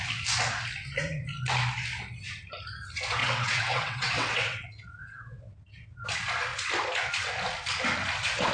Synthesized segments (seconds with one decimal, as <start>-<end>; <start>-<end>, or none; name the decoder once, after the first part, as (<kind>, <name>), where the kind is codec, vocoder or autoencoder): 3.2-6.0 (vocoder, WaveNeXt)